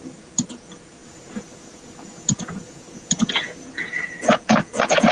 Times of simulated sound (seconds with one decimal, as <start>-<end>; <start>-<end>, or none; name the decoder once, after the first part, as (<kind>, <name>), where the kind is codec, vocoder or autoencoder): 0.0-5.1 (vocoder, Vocos)